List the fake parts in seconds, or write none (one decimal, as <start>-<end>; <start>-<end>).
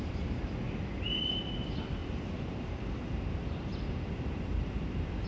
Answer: 2.0-5.3